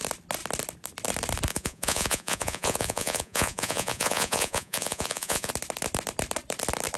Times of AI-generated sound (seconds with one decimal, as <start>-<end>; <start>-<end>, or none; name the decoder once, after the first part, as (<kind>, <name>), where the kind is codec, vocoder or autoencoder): 1.5-5.5 (vocoder, Vocos)